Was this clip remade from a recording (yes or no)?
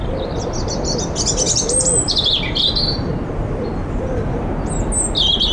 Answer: no